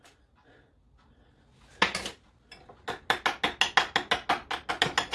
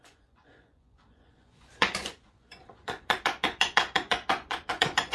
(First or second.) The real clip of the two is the first